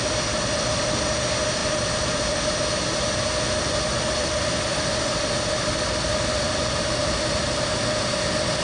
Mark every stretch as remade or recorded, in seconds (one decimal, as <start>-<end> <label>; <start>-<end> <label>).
0.0-8.6 recorded